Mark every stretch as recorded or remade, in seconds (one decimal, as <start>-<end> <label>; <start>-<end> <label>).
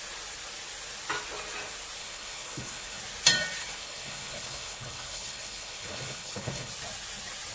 0.0-2.0 recorded; 2.0-3.0 remade; 3.0-3.6 recorded; 3.6-6.7 remade; 6.7-7.5 recorded